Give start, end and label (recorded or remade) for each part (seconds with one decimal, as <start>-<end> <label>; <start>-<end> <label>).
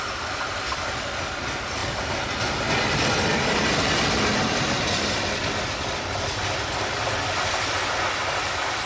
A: 0.0-8.9 recorded